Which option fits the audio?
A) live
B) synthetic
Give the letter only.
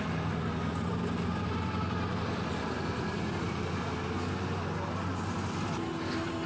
A